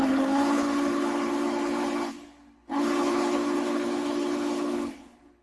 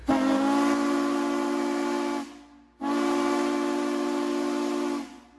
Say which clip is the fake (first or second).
first